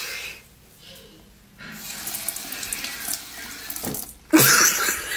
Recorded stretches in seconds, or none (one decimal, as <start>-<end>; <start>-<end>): 0.0-5.2